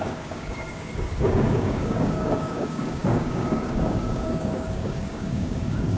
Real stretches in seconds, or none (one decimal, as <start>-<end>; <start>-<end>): none